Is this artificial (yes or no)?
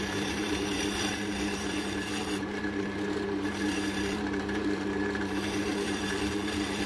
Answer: yes